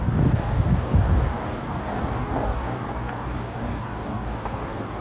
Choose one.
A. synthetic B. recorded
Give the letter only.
A